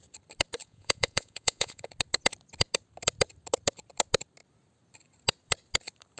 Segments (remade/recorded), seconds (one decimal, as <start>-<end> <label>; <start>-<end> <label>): 0.0-0.6 recorded; 0.6-1.9 remade; 1.9-6.2 recorded

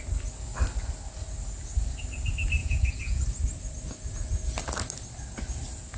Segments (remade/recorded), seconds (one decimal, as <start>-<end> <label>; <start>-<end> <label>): 0.0-2.6 recorded; 2.6-3.2 remade; 3.2-6.0 recorded